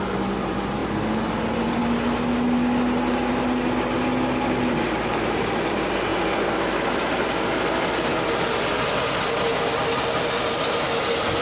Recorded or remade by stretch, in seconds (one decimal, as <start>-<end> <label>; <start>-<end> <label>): 0.0-11.4 recorded